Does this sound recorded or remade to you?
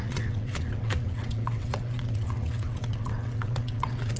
remade